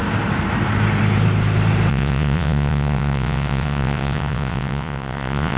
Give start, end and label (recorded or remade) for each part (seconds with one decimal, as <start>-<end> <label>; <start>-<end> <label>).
0.0-1.9 recorded; 1.9-5.6 remade